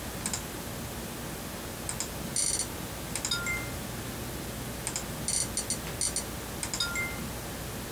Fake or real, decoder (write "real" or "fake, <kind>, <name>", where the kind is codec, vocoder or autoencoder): real